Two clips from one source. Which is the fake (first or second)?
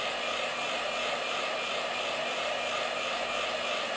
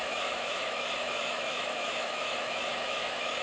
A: second